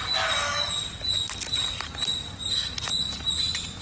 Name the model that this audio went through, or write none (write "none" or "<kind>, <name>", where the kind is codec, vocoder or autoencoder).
none